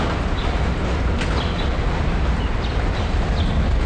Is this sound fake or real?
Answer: real